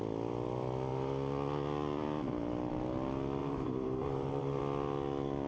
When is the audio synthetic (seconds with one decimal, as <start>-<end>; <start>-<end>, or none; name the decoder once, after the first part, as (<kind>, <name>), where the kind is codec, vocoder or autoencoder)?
3.4-4.6 (vocoder, BigVGAN v2)